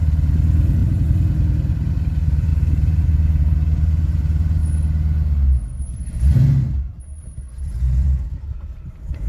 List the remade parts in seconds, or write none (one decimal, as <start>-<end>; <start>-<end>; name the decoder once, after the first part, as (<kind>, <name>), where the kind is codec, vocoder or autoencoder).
0.0-4.6 (vocoder, BigVGAN v2); 6.9-9.3